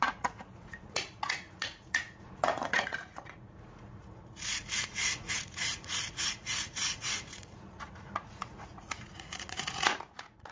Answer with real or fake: fake